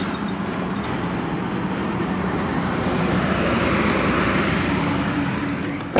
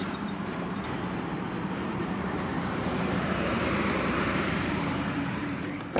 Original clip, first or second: first